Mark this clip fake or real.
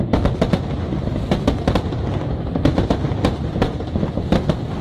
real